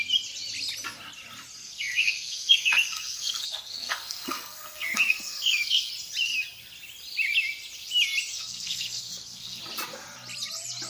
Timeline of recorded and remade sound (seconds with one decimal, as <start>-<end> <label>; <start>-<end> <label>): 0.0-1.6 recorded; 1.6-5.9 remade; 5.9-8.3 recorded; 8.3-9.6 remade; 9.6-10.9 recorded